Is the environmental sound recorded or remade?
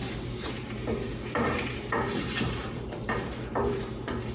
remade